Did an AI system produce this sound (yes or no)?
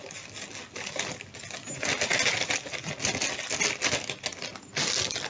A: no